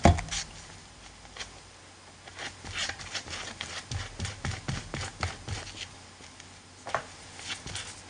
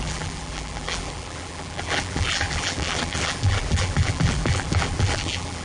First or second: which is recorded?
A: first